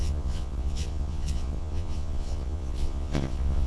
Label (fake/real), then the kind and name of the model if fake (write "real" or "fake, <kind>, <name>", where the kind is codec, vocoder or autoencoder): fake, vocoder, Vocos